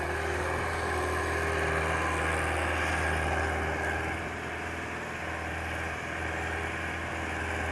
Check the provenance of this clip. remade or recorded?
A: recorded